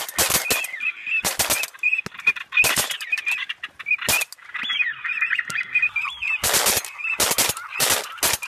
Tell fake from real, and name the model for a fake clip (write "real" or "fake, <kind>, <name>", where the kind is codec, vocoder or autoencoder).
real